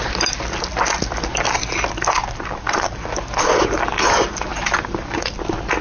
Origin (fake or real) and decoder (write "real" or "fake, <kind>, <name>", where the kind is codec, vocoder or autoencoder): real